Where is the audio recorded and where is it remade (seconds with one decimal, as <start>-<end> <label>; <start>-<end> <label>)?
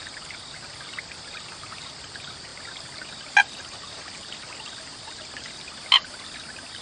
0.0-6.8 recorded